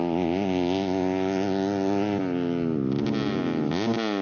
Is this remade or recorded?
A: recorded